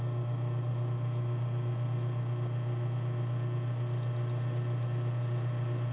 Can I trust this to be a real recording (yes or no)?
yes